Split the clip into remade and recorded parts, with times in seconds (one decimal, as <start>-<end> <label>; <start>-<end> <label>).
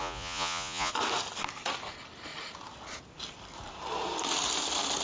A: 0.0-0.9 remade; 0.9-5.0 recorded